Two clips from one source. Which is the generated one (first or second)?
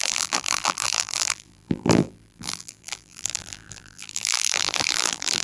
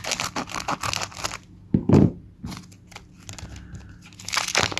first